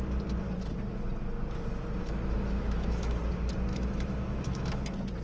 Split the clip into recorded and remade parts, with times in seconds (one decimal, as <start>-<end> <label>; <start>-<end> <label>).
0.0-2.0 recorded; 2.0-3.2 remade; 3.2-3.7 recorded; 3.7-4.8 remade; 4.8-5.2 recorded